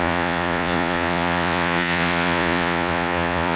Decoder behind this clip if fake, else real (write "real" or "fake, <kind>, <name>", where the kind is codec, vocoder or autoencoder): fake, vocoder, Vocos